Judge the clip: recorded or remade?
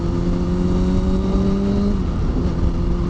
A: recorded